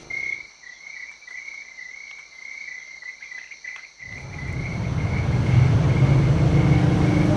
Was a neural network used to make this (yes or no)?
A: no